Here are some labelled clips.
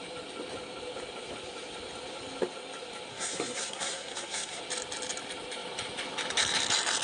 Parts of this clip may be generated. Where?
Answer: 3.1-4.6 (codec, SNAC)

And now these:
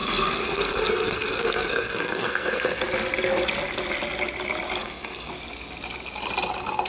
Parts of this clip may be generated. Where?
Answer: 0.0-2.8 (codec, SNAC); 4.8-5.3

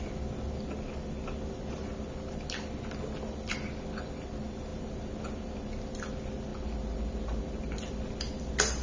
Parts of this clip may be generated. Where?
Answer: none

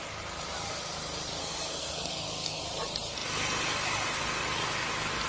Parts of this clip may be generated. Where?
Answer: 1.4-2.6 (codec, SNAC)

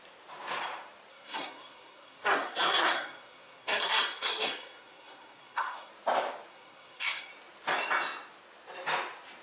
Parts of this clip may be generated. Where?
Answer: 1.1-5.9 (codec, SNAC); 6.5-7.3